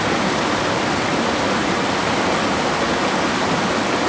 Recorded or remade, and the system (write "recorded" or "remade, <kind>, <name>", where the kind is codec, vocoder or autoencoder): recorded